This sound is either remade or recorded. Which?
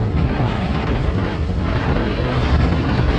remade